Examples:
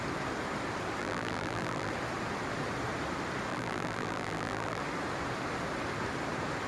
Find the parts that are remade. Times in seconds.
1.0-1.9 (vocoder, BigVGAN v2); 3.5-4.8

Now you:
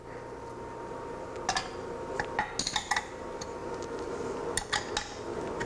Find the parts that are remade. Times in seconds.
none

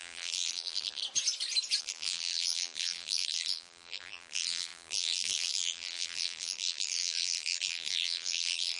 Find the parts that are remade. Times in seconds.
0.0-1.0 (vocoder, BigVGAN v2); 1.8-8.8